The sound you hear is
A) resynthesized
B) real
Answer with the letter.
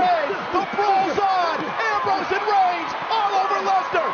B